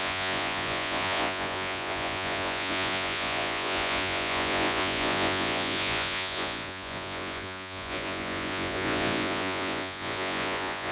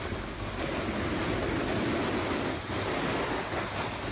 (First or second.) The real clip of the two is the second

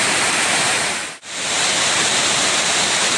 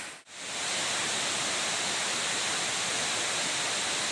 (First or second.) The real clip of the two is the second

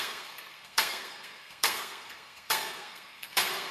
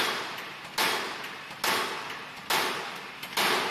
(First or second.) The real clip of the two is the second